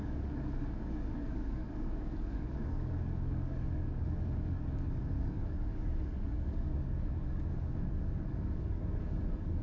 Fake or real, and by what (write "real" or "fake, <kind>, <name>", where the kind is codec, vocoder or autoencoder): fake, codec, DAC